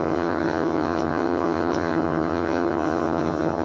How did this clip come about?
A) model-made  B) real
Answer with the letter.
A